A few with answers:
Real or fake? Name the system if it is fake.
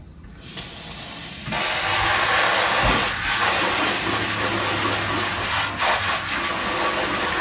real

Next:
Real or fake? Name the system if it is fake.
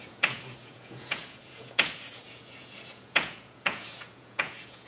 fake, vocoder, Vocos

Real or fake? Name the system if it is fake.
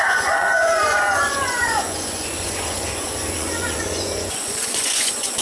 fake, vocoder, Vocos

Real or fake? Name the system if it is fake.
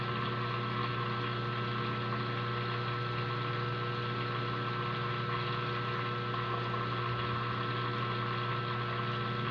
real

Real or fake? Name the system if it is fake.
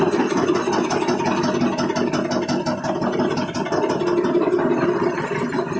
real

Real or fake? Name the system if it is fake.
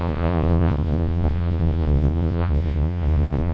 fake, vocoder, Vocos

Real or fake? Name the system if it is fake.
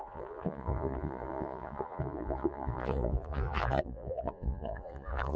fake, vocoder, Vocos